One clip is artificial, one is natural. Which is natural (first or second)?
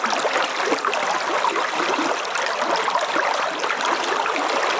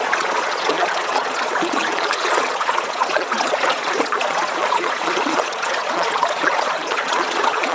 first